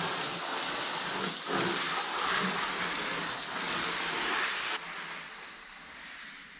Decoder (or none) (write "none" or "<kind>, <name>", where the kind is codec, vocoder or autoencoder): none